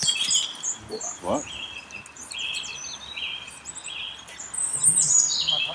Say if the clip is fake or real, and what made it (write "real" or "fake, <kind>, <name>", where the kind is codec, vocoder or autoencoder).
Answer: real